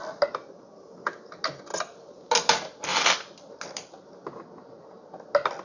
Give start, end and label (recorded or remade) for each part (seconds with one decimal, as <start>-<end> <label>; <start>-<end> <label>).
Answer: 0.0-5.6 recorded